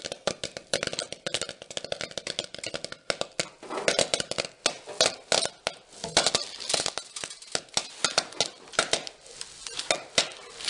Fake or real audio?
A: real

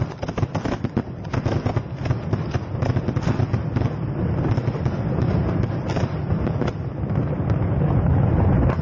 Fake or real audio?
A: real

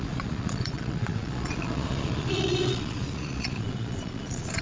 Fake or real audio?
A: fake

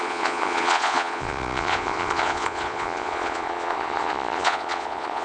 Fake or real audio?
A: fake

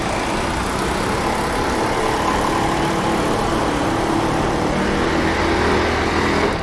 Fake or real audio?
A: real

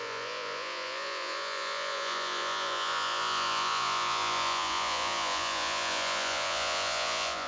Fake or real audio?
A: fake